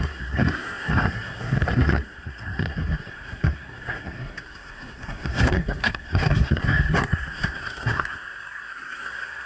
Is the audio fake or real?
fake